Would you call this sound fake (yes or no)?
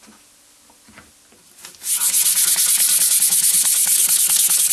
no